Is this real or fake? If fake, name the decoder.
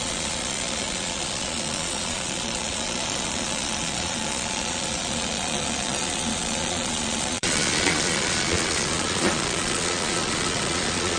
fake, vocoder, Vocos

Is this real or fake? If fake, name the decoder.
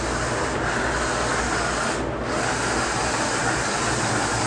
real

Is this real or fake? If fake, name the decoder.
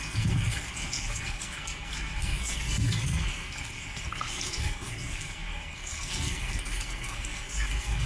fake, codec, SNAC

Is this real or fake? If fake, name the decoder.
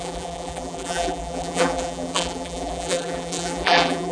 fake, vocoder, BigVGAN v2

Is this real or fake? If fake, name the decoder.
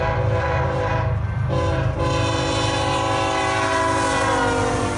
real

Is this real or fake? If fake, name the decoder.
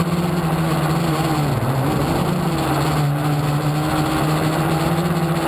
real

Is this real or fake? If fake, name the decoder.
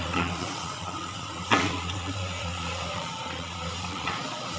fake, vocoder, Vocos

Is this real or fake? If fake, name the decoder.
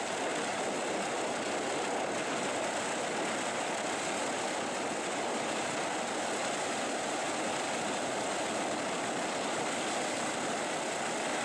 real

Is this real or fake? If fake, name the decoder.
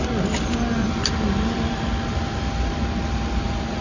real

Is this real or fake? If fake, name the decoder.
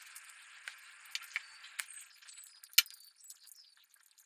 real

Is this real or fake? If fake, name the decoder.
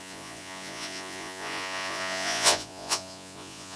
fake, vocoder, Vocos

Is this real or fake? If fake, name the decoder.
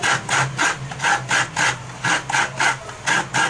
real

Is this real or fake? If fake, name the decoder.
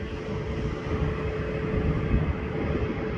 real